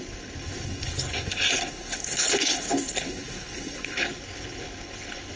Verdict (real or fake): fake